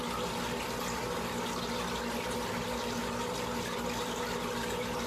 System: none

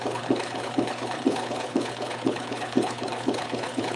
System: codec, HILCodec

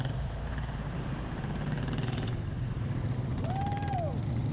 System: vocoder, BigVGAN v2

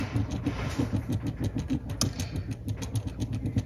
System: none